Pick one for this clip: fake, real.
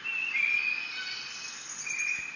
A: real